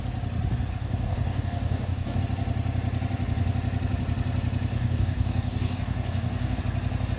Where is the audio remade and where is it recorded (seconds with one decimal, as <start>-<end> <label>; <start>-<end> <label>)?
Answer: 0.0-0.7 recorded; 0.7-2.2 remade; 2.2-4.7 recorded; 4.7-6.6 remade; 6.6-7.2 recorded